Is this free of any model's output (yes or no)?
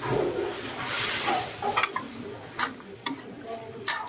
yes